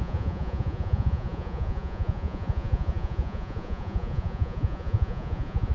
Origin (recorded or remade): remade